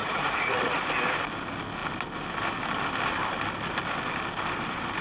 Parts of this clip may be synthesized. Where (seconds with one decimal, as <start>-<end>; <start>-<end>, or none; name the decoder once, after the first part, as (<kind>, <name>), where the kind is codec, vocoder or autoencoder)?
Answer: 0.0-0.8 (vocoder, Vocos)

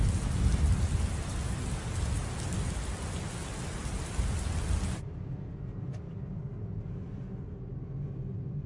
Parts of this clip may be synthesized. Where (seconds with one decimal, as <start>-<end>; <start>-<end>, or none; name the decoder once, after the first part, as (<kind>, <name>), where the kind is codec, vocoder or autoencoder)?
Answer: none

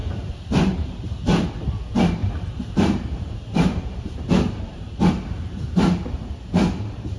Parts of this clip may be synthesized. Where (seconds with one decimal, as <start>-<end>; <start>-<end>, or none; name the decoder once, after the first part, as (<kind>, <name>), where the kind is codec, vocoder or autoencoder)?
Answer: 0.0-1.6 (vocoder, BigVGAN v2); 2.2-5.1

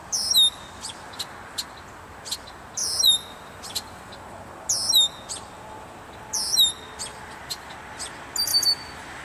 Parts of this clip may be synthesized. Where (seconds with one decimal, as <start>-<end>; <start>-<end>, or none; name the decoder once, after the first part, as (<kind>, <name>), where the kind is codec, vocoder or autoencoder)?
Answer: 2.8-4.1 (vocoder, BigVGAN v2); 7.1-7.7; 8.5-9.2

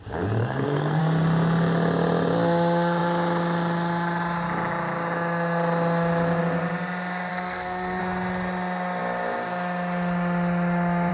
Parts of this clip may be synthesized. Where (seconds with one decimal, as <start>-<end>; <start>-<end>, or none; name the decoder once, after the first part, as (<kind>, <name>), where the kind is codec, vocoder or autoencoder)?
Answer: 0.4-1.0 (codec, SNAC); 7.3-8.0